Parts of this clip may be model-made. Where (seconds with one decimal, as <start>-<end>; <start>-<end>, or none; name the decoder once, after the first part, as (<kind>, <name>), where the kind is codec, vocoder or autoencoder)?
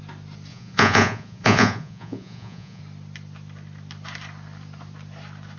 0.5-2.8 (vocoder, Vocos)